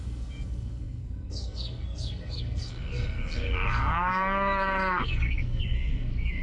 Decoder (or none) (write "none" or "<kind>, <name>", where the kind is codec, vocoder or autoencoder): codec, SNAC